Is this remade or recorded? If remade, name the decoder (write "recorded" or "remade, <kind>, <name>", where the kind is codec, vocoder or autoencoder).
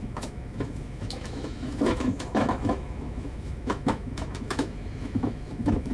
remade, autoencoder, DAC-VAE